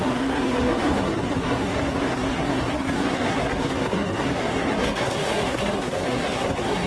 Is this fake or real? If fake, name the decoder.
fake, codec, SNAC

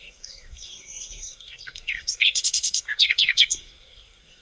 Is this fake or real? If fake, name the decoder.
fake, codec, SNAC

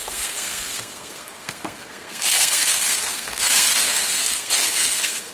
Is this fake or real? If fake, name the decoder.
fake, codec, SNAC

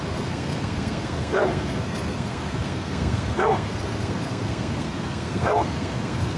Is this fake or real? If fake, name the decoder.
fake, codec, SNAC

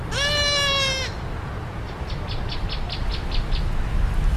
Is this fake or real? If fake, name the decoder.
real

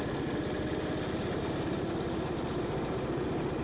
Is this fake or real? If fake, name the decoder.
real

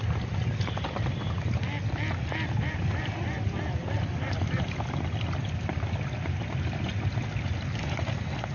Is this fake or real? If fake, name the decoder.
real